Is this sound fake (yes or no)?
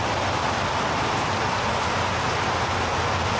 no